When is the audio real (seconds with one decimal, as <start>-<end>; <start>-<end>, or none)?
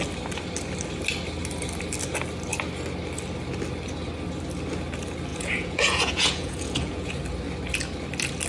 0.0-5.3; 7.1-8.5